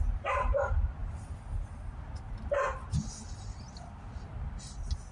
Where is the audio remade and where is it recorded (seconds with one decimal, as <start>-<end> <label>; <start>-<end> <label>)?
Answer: 0.0-5.1 recorded